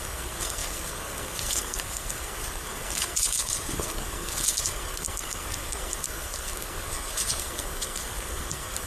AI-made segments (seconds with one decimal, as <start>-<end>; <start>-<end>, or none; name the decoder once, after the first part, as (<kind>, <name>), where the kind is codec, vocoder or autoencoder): 0.0-8.9 (codec, SNAC)

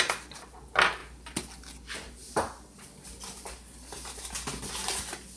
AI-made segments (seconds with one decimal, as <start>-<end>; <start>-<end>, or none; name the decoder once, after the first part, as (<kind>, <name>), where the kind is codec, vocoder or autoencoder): none

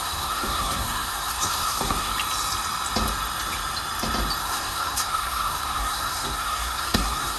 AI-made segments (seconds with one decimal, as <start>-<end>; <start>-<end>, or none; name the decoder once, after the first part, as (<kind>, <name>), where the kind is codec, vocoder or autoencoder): 0.0-2.1 (codec, SNAC); 4.4-7.4

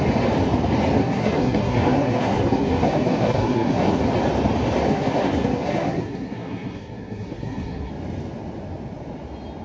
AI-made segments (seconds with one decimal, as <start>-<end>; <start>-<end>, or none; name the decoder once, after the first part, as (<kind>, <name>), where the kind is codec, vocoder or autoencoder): 1.0-4.0 (codec, SNAC); 4.9-7.9